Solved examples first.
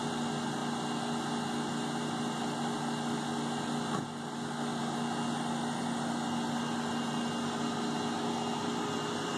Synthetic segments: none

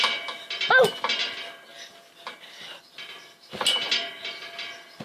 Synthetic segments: none

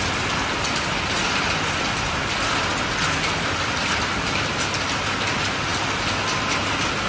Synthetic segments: none

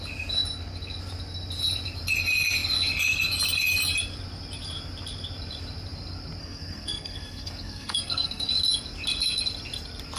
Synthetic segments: 6.4-8.5 (codec, SNAC)

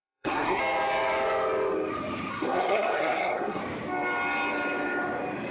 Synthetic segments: 0.0-0.6 (codec, SNAC); 2.3-3.6

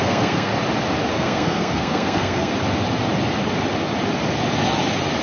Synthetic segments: 0.0-0.5 (codec, SNAC); 1.1-2.5